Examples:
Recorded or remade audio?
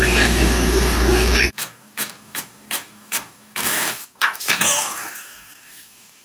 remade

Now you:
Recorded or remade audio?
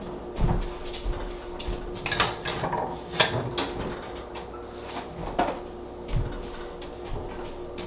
recorded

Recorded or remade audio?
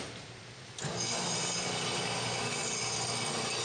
recorded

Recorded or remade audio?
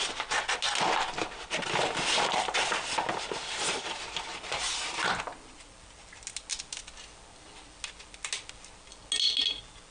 recorded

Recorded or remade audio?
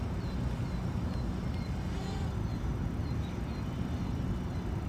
recorded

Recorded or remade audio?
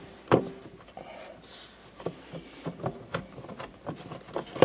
recorded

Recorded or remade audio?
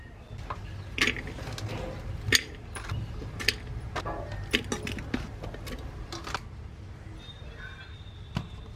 recorded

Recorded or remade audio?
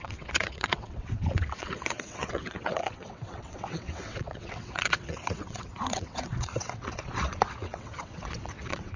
remade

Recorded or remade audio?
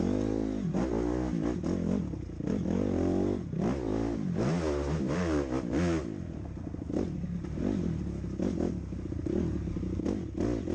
recorded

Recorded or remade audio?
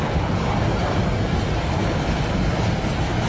recorded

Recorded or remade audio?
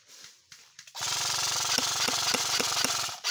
recorded